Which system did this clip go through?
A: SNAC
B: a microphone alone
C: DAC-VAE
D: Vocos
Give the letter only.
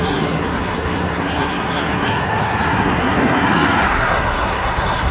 A